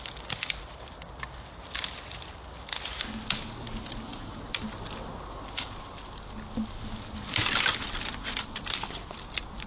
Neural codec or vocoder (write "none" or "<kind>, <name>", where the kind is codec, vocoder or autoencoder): none